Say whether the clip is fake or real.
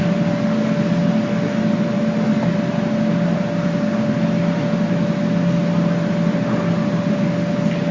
real